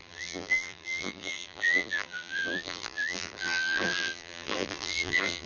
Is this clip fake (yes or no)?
yes